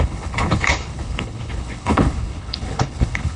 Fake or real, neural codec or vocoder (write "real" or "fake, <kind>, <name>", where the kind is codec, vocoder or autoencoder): fake, codec, HILCodec